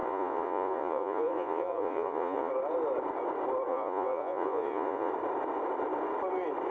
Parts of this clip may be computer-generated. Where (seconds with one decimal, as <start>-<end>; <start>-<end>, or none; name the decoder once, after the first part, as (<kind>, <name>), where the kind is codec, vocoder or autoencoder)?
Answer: 0.0-2.5 (vocoder, Vocos); 3.7-5.1

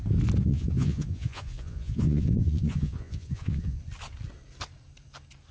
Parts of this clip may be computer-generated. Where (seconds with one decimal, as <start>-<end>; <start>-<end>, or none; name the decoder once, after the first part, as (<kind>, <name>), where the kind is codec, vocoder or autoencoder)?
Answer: 0.5-3.8 (vocoder, Vocos)

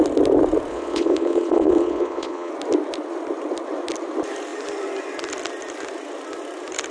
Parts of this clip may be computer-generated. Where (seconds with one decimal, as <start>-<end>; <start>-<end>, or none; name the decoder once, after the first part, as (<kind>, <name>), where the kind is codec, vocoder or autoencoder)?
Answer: 0.7-2.5 (vocoder, Vocos)

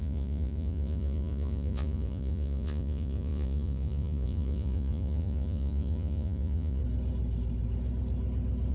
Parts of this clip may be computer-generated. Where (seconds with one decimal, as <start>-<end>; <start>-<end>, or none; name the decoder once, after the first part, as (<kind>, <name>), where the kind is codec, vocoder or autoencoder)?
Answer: 0.0-6.8 (vocoder, Vocos)

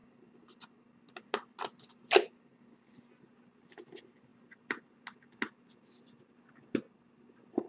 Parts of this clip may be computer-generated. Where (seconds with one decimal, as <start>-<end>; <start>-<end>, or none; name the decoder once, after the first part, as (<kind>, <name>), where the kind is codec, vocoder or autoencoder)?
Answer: none

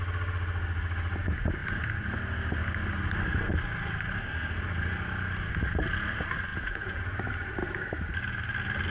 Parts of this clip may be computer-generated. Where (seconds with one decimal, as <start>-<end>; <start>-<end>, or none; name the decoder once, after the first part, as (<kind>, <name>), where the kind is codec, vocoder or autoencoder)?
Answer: 6.5-7.0 (vocoder, Vocos)

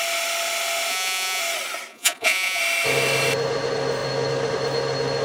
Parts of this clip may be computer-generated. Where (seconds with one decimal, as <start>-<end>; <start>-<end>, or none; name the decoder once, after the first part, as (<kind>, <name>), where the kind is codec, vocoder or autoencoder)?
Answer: 0.9-1.4 (vocoder, Vocos); 1.9-2.6

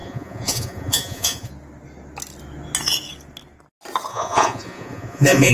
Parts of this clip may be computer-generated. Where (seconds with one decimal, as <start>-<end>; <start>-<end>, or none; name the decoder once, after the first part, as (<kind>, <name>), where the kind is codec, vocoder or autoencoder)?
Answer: 0.0-1.5 (vocoder, Vocos); 4.1-5.5